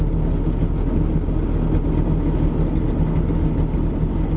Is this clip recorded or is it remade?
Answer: recorded